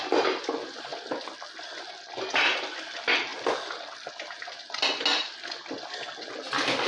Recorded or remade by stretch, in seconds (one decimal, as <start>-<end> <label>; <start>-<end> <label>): 0.0-6.9 recorded